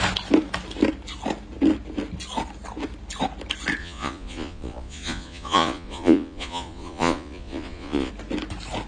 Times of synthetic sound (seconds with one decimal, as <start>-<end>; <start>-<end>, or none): 3.8-8.1